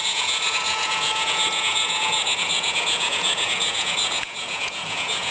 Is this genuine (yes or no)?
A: no